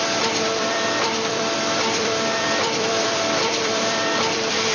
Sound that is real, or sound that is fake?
fake